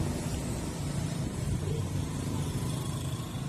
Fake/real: fake